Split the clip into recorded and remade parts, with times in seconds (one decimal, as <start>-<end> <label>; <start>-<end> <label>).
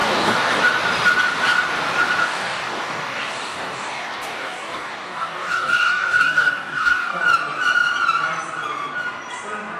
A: 0.0-0.6 remade; 0.6-2.2 recorded; 2.2-7.2 remade; 7.2-9.8 recorded